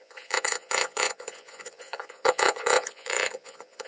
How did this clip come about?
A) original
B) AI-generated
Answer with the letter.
B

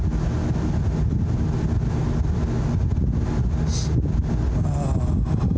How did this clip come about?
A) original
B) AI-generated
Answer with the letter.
A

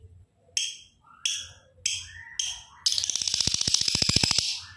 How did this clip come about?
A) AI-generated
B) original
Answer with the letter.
B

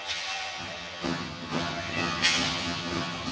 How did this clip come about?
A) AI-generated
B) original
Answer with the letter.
A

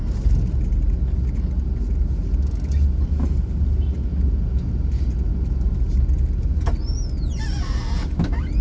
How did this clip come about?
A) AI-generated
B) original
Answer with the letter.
B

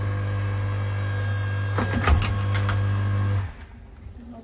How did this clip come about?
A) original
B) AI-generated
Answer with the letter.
A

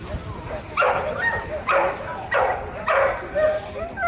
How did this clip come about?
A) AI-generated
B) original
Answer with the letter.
B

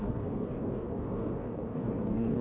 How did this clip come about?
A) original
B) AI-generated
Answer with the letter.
B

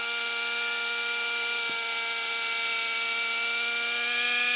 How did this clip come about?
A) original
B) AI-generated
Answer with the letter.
A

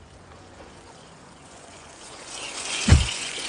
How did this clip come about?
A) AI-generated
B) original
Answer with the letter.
A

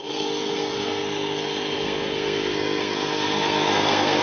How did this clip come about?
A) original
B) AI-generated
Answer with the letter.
B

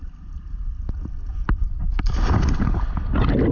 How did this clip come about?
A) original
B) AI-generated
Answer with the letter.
A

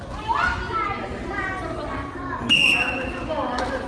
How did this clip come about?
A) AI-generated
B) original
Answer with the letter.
B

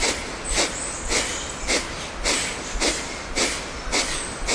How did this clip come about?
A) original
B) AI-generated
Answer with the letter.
A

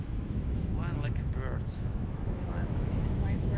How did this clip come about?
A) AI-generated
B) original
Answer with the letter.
A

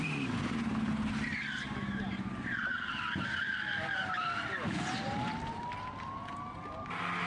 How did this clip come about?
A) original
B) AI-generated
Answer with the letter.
A